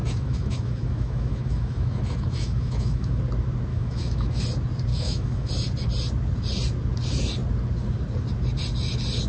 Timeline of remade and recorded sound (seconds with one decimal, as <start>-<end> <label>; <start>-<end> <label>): 0.0-3.2 remade; 3.2-3.7 recorded; 3.7-4.4 remade; 4.4-4.9 recorded; 4.9-5.5 remade; 5.5-9.3 recorded